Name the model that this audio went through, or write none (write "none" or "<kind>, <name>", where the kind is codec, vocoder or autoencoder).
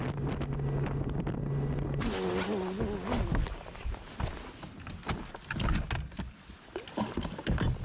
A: none